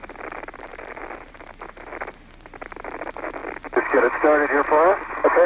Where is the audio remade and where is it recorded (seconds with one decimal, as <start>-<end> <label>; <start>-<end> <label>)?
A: 0.0-5.5 recorded